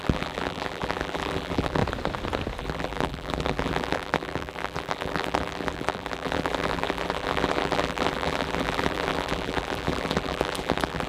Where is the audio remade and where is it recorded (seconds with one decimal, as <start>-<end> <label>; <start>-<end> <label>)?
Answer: 0.0-1.8 remade; 1.8-2.6 recorded; 2.6-11.1 remade